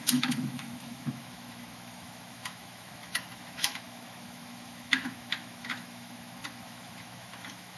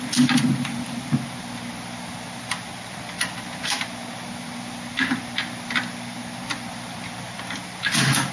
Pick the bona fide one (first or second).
second